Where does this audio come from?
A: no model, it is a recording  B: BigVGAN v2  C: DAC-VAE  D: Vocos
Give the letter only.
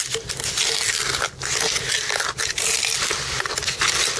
A